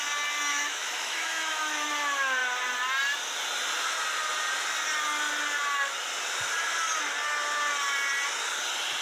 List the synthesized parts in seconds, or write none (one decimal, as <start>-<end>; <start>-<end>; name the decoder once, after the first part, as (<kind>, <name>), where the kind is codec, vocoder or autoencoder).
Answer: 0.5-1.9 (autoencoder, DAC-VAE)